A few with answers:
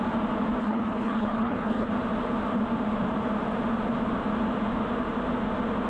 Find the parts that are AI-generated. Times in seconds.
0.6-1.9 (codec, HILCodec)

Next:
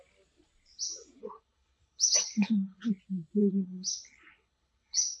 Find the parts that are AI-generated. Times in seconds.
1.2-2.9 (codec, HILCodec); 3.4-5.2

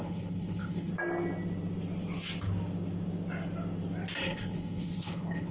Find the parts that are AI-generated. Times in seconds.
0.0-0.9 (codec, HILCodec); 4.2-5.5

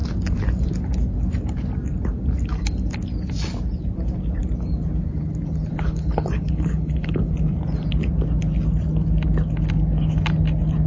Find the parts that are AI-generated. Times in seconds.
5.7-7.3 (codec, HILCodec)